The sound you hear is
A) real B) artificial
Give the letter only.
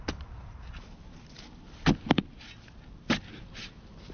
A